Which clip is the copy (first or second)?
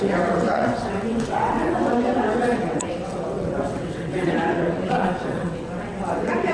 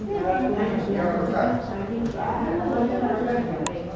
first